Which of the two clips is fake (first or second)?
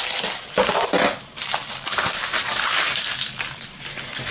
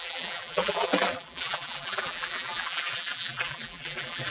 second